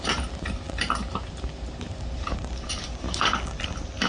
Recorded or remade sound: recorded